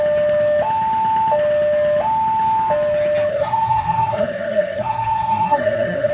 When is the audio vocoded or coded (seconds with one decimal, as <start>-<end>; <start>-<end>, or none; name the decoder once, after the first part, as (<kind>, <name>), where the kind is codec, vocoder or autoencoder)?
3.3-6.1 (codec, SNAC)